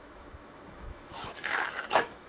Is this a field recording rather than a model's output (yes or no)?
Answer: no